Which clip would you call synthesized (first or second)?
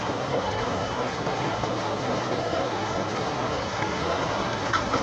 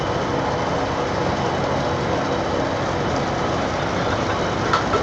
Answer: first